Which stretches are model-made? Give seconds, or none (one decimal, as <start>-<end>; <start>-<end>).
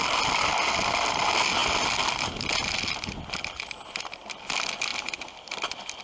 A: none